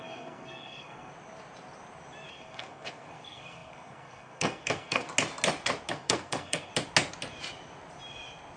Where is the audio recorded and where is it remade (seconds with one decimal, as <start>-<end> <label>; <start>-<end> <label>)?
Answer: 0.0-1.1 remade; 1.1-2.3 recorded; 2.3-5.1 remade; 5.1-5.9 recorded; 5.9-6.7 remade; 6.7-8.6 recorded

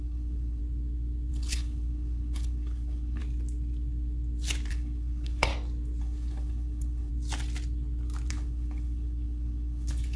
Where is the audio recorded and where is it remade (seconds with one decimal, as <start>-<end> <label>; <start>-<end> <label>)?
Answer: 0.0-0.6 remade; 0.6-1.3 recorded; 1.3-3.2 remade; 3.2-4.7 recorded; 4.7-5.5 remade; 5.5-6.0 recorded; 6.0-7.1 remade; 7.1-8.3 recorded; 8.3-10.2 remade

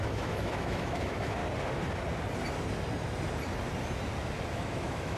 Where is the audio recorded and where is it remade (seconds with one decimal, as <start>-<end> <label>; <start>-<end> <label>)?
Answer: 0.0-1.4 remade; 1.4-4.5 recorded; 4.5-5.2 remade

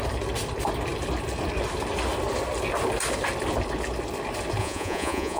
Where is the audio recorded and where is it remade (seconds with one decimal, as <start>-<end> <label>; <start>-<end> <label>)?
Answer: 0.0-4.6 recorded; 4.6-5.4 remade